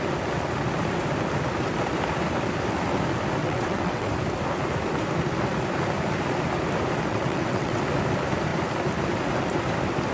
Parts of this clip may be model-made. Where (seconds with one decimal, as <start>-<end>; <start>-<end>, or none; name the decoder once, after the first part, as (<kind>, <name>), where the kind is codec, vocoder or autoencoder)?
3.4-4.1 (vocoder, WaveNeXt); 7.1-7.8